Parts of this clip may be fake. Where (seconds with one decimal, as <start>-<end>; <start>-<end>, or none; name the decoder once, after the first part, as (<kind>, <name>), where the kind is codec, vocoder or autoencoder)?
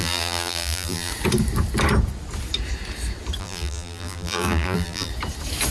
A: 0.0-1.1 (vocoder, BigVGAN v2); 3.4-5.1